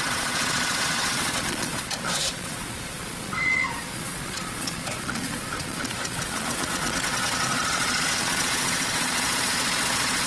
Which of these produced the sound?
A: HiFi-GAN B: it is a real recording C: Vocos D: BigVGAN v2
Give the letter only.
C